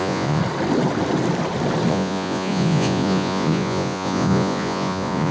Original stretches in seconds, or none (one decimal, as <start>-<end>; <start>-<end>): 0.4-1.9